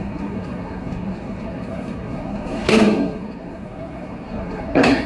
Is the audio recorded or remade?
remade